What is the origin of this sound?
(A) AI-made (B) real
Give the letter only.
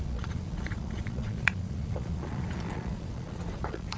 A